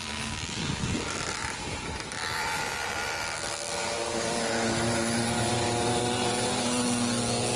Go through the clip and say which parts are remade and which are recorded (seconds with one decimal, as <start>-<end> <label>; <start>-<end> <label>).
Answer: 0.0-7.6 recorded